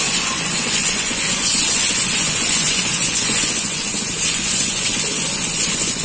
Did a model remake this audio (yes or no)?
yes